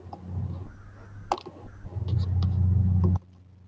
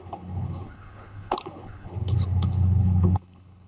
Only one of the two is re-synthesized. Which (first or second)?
second